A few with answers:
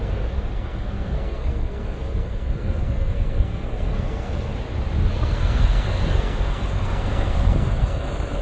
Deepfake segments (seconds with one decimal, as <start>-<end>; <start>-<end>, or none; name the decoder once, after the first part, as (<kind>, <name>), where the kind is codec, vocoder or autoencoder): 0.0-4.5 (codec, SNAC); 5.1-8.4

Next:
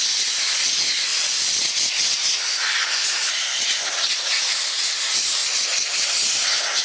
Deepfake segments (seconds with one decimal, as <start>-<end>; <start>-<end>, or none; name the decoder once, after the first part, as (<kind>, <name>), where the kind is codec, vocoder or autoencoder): 0.0-1.1 (vocoder, Vocos); 4.1-5.4

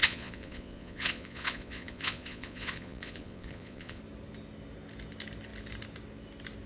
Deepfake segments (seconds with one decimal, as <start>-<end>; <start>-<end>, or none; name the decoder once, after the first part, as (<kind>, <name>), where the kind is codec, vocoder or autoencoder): 0.0-4.0 (vocoder, Vocos)

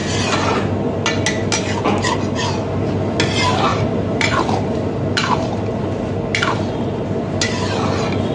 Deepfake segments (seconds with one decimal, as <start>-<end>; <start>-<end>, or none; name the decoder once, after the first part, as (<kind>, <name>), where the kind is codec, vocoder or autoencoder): 3.7-6.1 (vocoder, BigVGAN v2)